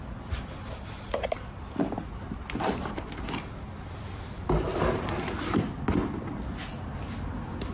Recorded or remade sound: recorded